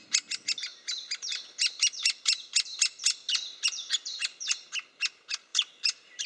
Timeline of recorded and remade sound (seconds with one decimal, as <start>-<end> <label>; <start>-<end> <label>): 0.0-0.7 recorded; 0.7-4.5 remade; 4.5-5.5 recorded; 5.5-6.3 remade